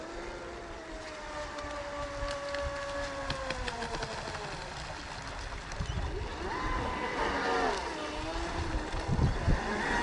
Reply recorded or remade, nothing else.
recorded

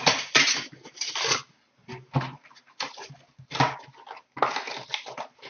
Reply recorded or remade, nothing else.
recorded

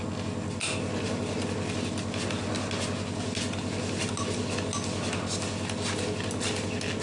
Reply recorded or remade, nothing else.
recorded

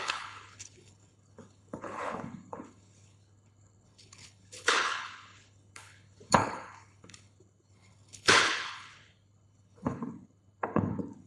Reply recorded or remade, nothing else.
remade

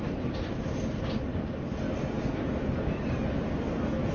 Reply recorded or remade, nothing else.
recorded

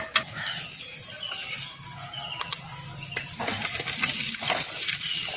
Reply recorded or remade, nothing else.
recorded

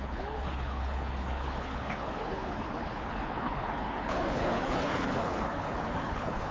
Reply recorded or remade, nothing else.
remade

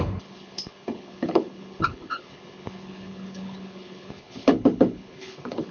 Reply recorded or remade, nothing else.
remade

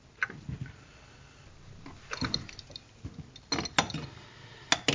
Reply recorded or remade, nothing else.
recorded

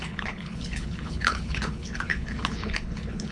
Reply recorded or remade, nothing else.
remade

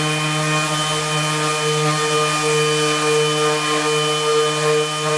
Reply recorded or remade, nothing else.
recorded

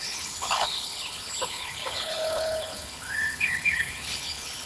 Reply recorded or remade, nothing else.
remade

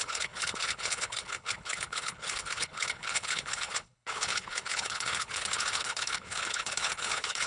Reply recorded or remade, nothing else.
remade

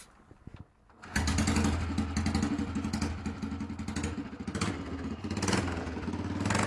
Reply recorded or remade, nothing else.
recorded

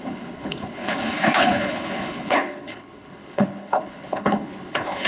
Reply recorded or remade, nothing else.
remade